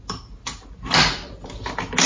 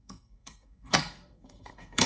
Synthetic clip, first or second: second